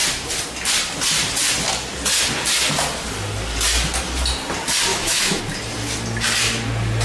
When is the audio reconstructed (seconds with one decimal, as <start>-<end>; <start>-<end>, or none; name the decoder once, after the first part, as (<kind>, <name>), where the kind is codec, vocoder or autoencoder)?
4.9-5.4 (autoencoder, DAC-VAE)